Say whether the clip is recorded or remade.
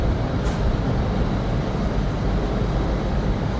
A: remade